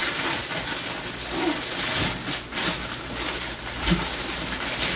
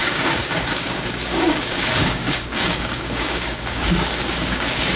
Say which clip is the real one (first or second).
first